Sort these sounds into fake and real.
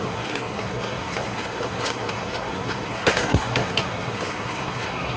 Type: fake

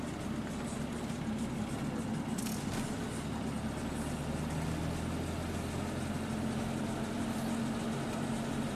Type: real